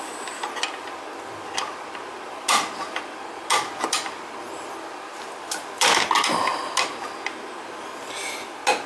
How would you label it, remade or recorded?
recorded